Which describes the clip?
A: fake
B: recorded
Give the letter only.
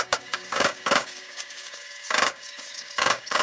A